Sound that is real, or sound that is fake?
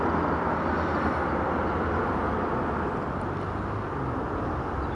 real